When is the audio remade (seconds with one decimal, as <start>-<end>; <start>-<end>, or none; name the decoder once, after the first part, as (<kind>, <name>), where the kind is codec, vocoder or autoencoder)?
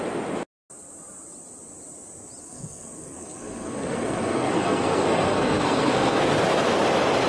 2.4-6.3 (codec, SNAC)